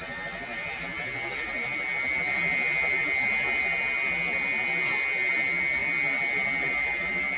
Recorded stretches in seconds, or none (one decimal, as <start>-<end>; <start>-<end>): 0.0-7.4